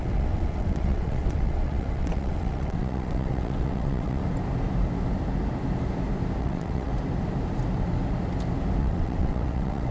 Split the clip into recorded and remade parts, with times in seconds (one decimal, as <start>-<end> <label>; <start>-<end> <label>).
0.0-4.2 remade; 4.2-6.4 recorded; 6.4-6.9 remade; 6.9-8.8 recorded; 8.8-9.9 remade